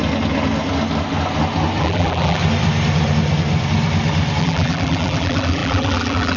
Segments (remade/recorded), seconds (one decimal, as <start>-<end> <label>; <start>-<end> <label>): 0.0-1.8 recorded; 1.8-2.4 remade; 2.4-4.4 recorded; 4.4-6.4 remade